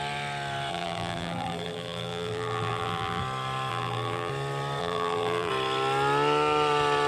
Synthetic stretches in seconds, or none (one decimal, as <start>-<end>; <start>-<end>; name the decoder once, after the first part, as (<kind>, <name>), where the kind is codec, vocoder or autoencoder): 0.7-3.2 (vocoder, BigVGAN v2); 3.7-4.3; 4.8-5.5